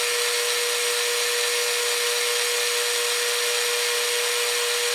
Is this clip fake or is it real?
real